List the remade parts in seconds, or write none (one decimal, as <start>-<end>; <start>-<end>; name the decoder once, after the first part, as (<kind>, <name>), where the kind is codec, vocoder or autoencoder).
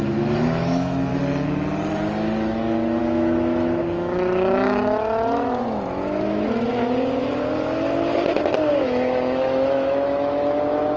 0.0-1.1 (autoencoder, DAC-VAE); 3.0-6.7; 8.8-11.0